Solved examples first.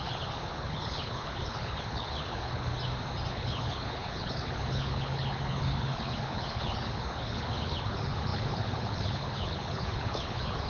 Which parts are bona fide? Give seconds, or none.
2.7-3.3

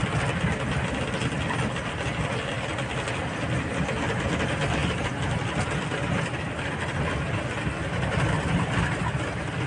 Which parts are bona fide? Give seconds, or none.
0.0-9.7

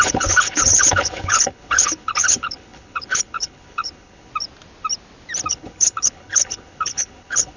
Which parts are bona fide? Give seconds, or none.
4.3-5.5

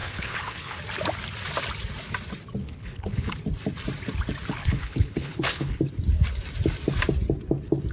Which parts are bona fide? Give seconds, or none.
0.8-2.6; 3.3-4.6; 5.8-7.9

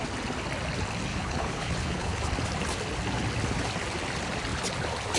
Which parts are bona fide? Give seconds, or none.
0.0-1.1; 2.2-5.2

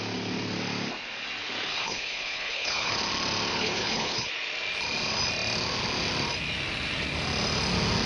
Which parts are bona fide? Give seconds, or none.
0.0-1.7; 2.9-3.5; 4.3-8.1

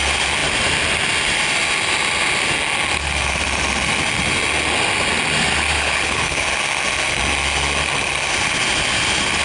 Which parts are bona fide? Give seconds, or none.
0.0-5.7; 6.4-9.4

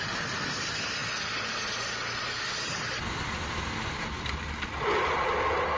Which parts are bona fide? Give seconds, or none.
0.0-5.8